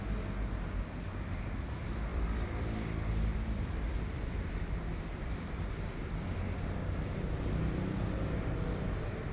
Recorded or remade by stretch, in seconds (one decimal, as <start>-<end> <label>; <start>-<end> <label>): 0.0-2.1 recorded; 2.1-6.1 remade; 6.1-9.3 recorded